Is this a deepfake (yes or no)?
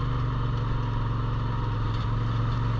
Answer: no